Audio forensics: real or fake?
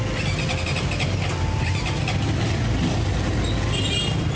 real